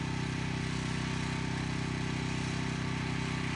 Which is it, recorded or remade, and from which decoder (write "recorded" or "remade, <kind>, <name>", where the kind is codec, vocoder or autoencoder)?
recorded